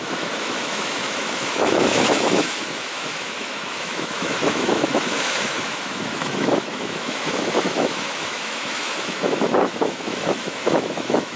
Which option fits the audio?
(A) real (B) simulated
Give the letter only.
B